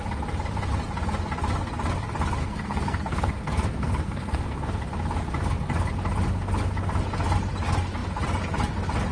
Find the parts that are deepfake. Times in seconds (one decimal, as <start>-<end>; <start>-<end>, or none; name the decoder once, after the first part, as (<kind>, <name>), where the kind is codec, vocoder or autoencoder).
2.4-4.8 (codec, SNAC)

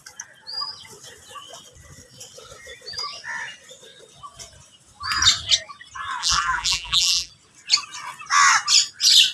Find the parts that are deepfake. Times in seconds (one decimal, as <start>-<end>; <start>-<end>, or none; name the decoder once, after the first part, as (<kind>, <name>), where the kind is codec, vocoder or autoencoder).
6.2-7.3 (vocoder, BigVGAN v2)